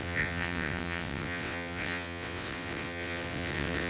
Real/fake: fake